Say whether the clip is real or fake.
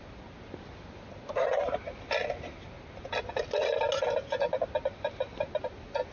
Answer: real